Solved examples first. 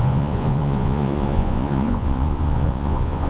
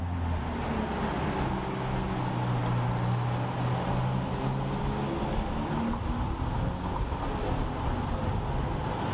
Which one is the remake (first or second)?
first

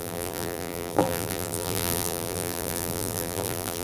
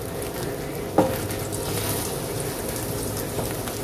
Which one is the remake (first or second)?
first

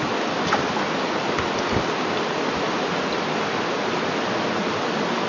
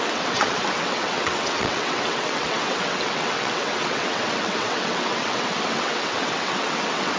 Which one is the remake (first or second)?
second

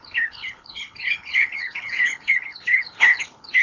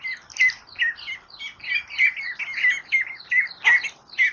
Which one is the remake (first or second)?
first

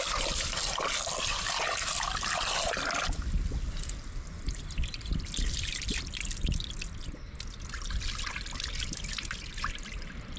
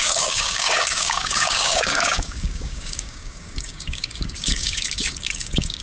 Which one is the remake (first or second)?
second